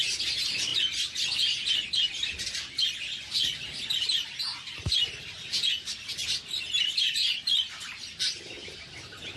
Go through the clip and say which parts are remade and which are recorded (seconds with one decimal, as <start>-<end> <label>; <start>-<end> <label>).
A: 0.0-9.4 recorded